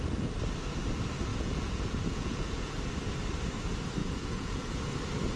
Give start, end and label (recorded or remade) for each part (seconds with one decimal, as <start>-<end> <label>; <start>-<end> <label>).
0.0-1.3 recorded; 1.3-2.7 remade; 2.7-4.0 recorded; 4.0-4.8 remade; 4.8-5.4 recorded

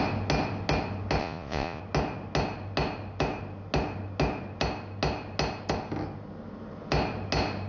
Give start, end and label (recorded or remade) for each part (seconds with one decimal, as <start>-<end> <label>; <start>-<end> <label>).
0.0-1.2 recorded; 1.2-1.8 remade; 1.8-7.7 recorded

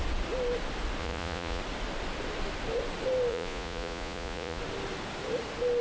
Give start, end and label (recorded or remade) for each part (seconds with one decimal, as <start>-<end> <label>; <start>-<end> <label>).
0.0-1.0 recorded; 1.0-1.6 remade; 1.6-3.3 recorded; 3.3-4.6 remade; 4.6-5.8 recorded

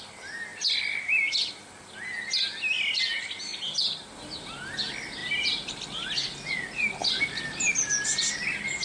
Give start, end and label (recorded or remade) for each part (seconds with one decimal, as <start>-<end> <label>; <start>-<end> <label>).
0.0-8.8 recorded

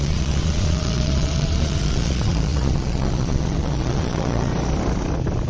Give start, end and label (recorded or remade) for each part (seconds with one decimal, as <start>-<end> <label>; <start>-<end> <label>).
0.0-4.5 remade; 4.5-5.5 recorded